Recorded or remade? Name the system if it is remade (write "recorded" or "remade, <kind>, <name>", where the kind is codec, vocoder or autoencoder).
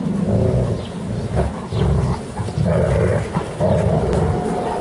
recorded